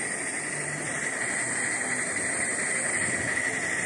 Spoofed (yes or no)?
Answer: no